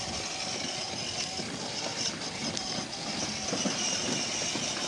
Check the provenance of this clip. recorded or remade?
recorded